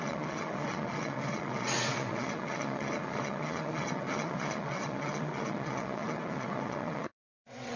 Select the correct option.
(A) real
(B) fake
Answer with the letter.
B